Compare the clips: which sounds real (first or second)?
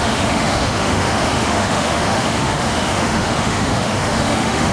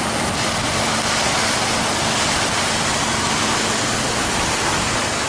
second